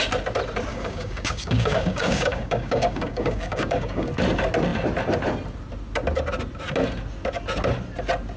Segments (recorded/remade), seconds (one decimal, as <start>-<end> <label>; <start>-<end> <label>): 0.0-0.7 recorded; 0.7-4.1 remade; 4.1-8.4 recorded